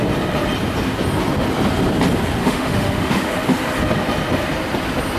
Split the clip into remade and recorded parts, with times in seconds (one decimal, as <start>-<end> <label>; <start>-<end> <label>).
0.0-2.4 recorded; 2.4-3.3 remade; 3.3-5.2 recorded